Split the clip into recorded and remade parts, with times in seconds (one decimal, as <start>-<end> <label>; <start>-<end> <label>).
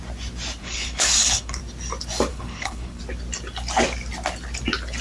0.0-0.6 recorded; 0.6-1.6 remade; 1.6-2.3 recorded; 2.3-3.0 remade; 3.0-5.0 recorded